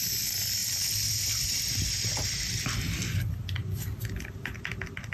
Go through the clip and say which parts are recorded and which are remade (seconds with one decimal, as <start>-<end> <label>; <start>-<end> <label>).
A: 0.0-5.1 recorded